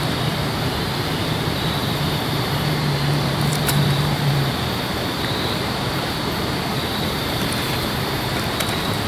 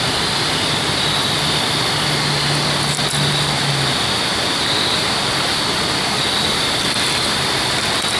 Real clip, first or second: second